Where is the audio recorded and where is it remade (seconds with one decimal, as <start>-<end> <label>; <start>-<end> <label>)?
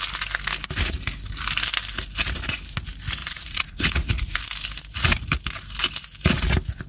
0.0-3.2 recorded; 3.2-4.4 remade; 4.4-6.9 recorded